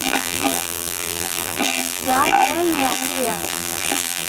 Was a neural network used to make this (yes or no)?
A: yes